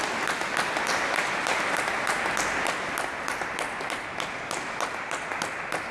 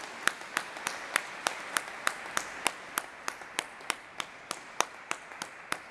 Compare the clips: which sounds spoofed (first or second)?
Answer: second